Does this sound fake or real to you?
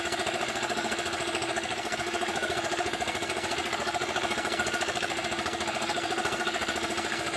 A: fake